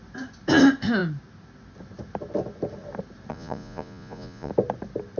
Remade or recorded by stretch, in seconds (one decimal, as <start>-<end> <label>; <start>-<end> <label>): 0.0-3.3 recorded; 3.3-4.5 remade; 4.5-5.2 recorded